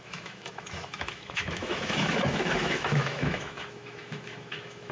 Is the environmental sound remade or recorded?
remade